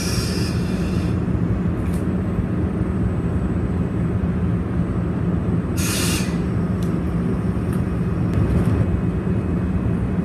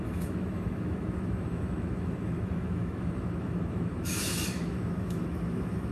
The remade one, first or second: second